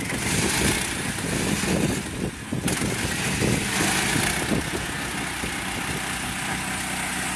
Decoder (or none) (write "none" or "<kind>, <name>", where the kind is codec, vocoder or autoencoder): none